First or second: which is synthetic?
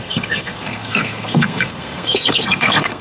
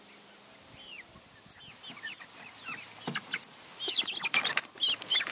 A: first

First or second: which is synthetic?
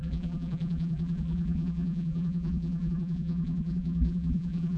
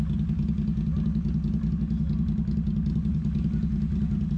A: first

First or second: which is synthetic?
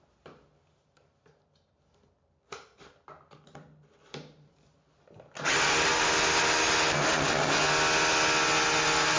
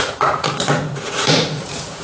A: second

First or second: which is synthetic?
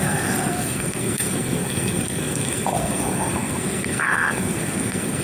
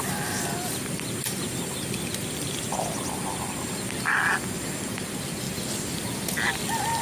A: first